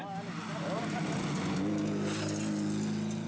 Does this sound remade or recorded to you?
recorded